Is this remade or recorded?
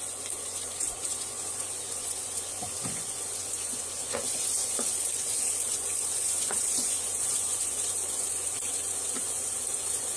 remade